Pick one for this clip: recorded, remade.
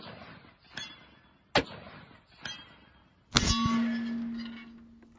recorded